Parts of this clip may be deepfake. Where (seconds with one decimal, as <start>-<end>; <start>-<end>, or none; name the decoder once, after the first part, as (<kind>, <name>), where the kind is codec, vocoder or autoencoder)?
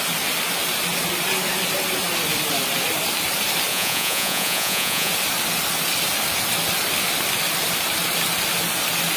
3.7-5.1 (vocoder, Vocos)